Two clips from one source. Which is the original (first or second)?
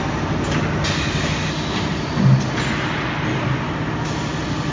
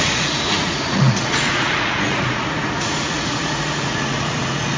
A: first